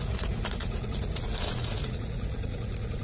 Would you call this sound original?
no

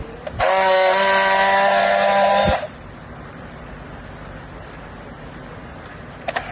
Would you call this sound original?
yes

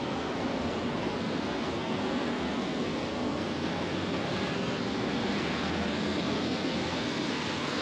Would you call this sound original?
no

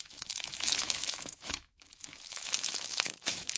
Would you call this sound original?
no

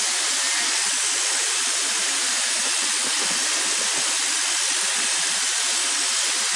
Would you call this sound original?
yes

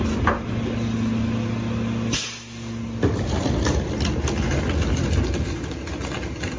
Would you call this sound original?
yes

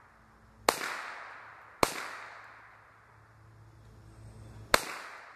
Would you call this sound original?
yes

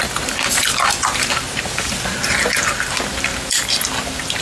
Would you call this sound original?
yes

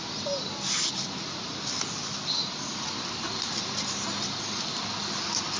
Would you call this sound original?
yes